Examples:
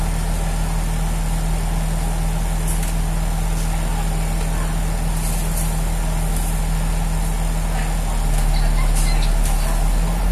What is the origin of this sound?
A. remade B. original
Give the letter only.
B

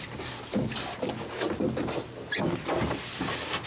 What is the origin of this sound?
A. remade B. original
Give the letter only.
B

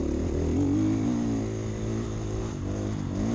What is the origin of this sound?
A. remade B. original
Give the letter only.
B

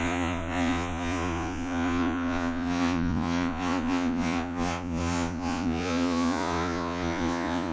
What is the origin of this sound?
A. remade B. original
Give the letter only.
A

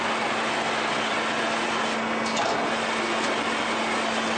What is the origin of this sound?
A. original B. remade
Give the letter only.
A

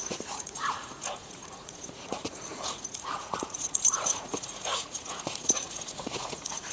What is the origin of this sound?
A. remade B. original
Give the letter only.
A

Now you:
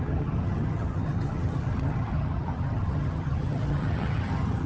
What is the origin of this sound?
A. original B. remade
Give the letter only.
B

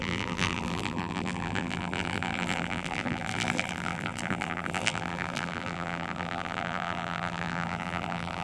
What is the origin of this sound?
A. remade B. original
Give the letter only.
A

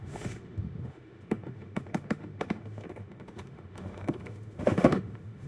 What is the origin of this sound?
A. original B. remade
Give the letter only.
B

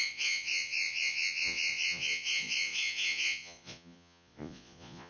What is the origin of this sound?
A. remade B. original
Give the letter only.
A